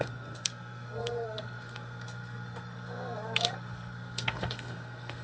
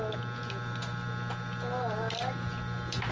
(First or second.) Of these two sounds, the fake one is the first